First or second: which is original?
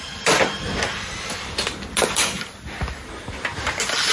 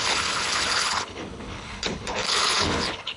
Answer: first